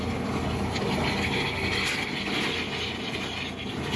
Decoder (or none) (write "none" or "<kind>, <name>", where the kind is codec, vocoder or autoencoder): none